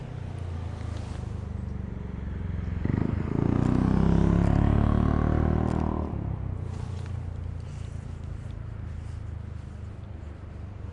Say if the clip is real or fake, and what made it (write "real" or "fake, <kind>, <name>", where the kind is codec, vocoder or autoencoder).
real